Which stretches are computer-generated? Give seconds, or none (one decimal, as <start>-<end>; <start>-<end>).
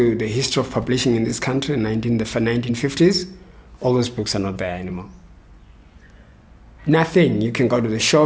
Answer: 3.2-6.6